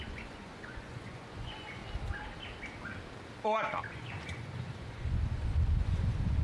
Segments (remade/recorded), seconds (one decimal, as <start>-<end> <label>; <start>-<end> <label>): 0.0-1.8 remade; 1.8-3.9 recorded; 3.9-6.4 remade